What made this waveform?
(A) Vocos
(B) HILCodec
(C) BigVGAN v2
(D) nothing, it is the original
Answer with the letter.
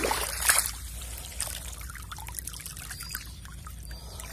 C